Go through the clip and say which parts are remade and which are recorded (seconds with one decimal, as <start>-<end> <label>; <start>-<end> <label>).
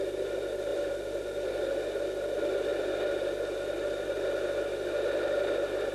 0.0-0.7 recorded; 0.7-1.6 remade; 1.6-5.9 recorded